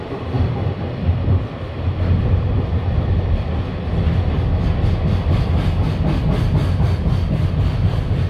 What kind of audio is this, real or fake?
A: real